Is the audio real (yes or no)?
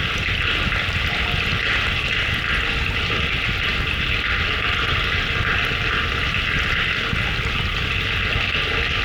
yes